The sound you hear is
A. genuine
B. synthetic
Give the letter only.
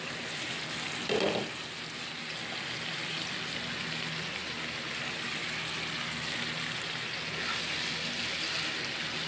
A